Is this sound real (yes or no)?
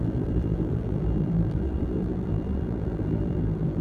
no